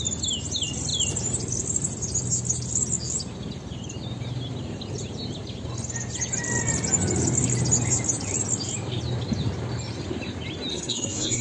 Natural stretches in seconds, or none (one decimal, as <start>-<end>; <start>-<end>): 0.0-10.7